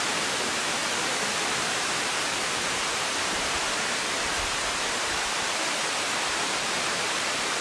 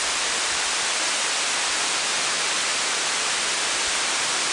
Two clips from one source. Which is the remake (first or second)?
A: first